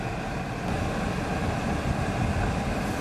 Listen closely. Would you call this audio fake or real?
real